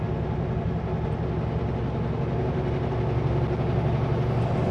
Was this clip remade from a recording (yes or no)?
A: no